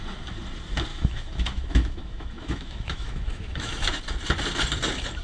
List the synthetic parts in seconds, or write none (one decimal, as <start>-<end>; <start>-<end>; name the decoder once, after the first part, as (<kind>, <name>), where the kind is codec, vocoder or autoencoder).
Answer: 0.9-4.0 (autoencoder, DAC-VAE)